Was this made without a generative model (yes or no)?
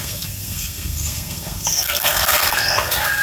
no